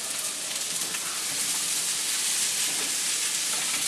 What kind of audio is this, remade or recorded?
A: recorded